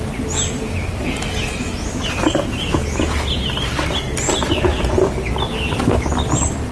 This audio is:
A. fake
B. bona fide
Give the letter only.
B